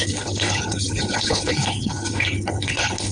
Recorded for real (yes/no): no